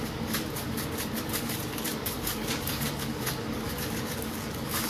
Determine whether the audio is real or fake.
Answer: fake